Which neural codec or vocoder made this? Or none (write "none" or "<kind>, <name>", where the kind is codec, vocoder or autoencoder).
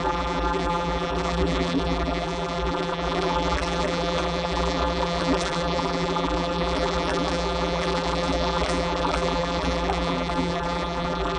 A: vocoder, BigVGAN v2